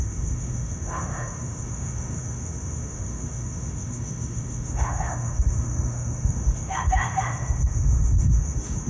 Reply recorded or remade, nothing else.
remade